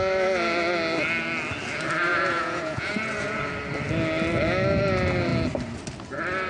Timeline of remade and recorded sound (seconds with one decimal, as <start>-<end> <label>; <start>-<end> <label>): 0.0-2.1 recorded; 2.1-3.4 remade; 3.4-6.5 recorded